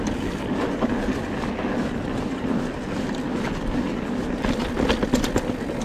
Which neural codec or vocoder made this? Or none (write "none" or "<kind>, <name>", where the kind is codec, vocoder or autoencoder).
none